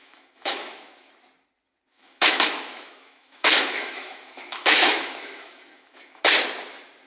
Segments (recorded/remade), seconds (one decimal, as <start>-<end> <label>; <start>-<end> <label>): 0.0-1.1 remade; 1.1-1.9 recorded; 1.9-6.2 remade; 6.2-7.1 recorded